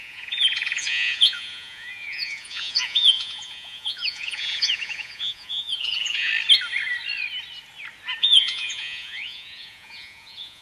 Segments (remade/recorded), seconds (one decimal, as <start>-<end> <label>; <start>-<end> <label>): 0.0-6.3 remade; 6.3-8.2 recorded; 8.2-10.6 remade